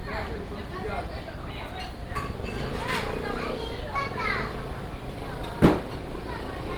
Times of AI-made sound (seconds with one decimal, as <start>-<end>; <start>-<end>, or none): none